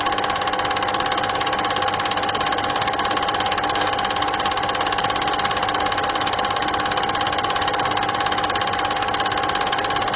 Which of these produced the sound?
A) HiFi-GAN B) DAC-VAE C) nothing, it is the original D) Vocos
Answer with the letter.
C